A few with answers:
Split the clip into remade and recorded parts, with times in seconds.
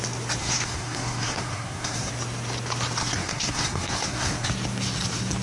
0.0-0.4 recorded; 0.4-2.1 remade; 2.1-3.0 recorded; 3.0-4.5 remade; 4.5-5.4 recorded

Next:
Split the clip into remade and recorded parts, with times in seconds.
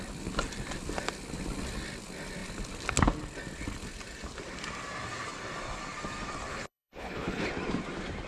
0.0-6.5 recorded; 6.5-7.5 remade; 7.5-8.3 recorded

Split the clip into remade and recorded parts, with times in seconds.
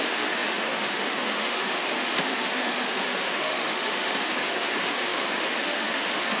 0.0-6.4 remade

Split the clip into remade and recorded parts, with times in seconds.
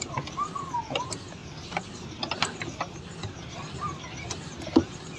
0.0-5.2 recorded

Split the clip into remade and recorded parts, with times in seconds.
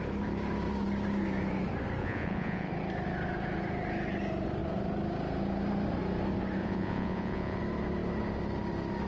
0.0-2.0 recorded; 2.0-2.7 remade; 2.7-6.6 recorded; 6.6-7.6 remade; 7.6-9.1 recorded